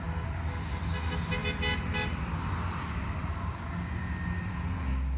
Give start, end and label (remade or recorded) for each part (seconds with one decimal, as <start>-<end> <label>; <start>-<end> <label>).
0.0-5.2 recorded